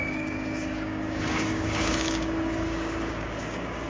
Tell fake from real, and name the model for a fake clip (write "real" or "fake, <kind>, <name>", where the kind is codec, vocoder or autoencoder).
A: fake, codec, DAC